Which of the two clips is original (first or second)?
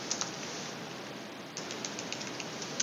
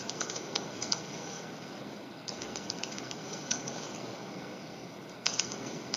first